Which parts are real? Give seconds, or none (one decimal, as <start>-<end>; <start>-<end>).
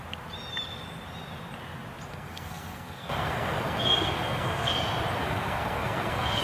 0.0-2.1; 4.8-5.2